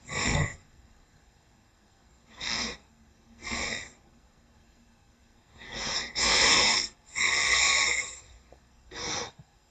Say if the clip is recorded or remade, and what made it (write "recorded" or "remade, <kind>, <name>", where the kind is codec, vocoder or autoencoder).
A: remade, codec, SNAC